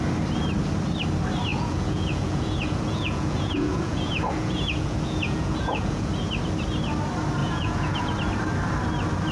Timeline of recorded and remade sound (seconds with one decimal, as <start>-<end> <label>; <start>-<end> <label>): 0.0-1.5 recorded; 1.5-6.1 remade; 6.1-7.4 recorded; 7.4-8.1 remade; 8.1-9.3 recorded